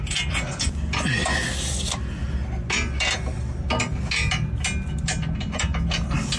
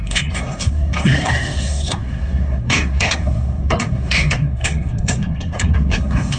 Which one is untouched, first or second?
first